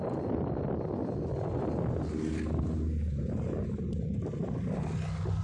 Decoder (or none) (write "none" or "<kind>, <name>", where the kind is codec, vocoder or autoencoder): none